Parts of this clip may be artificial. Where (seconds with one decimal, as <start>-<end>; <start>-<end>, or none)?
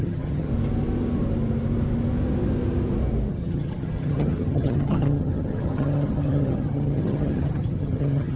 0.0-0.5; 3.3-8.4